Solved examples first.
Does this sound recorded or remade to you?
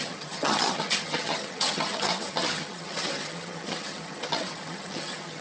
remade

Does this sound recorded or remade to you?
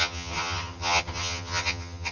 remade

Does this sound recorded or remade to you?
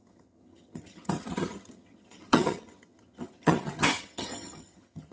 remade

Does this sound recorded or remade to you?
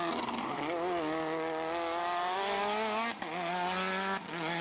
recorded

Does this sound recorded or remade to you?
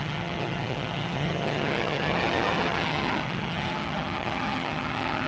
remade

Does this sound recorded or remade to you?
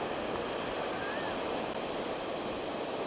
recorded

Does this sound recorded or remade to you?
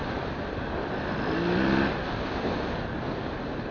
recorded